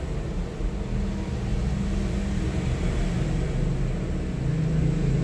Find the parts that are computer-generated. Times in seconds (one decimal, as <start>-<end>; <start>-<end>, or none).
none